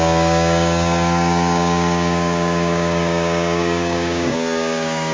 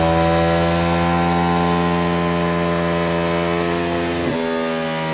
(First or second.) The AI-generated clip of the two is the first